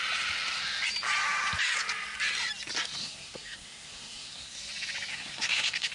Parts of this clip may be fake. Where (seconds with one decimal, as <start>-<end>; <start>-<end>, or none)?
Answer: 3.0-4.6; 5.1-5.9